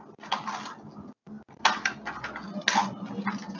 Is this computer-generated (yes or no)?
no